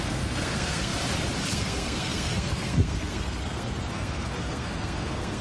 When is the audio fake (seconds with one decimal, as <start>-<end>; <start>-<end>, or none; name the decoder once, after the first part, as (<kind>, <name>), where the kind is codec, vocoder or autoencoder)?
0.0-0.9 (codec, SNAC); 1.5-5.4